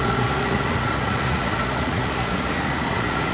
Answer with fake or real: fake